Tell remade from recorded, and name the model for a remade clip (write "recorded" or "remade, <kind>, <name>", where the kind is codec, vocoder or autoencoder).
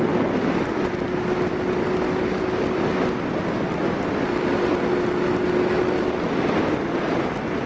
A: recorded